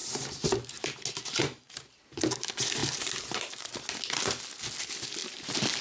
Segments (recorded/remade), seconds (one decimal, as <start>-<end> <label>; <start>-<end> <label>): 0.0-0.5 remade; 0.5-1.4 recorded; 1.4-2.0 remade; 2.0-2.8 recorded; 2.8-3.7 remade; 3.7-5.2 recorded; 5.2-5.8 remade